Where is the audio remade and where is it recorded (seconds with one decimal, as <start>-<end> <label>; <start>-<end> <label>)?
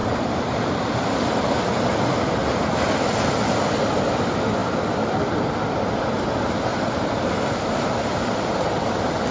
0.0-2.1 remade; 2.1-4.6 recorded; 4.6-5.3 remade; 5.3-6.7 recorded; 6.7-8.9 remade; 8.9-9.3 recorded